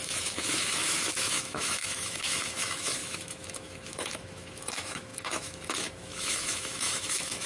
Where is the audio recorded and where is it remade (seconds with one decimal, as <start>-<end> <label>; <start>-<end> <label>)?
0.0-7.5 remade